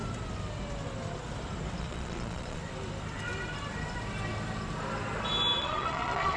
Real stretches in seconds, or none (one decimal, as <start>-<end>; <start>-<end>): 0.0-1.8; 2.6-5.6

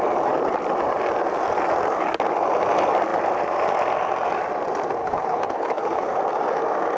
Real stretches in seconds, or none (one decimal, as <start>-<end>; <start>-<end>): 0.0-5.0; 6.2-7.0

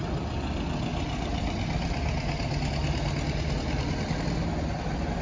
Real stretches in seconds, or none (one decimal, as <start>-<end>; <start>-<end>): 0.0-5.2

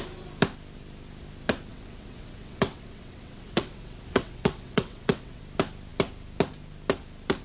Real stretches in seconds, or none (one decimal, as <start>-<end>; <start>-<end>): 0.0-1.7; 5.4-7.4